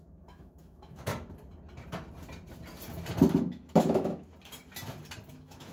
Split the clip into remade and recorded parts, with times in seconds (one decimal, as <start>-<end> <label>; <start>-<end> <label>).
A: 0.0-1.1 remade; 1.1-3.4 recorded; 3.4-4.3 remade; 4.3-5.3 recorded; 5.3-5.7 remade